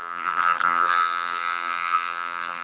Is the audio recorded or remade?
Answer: remade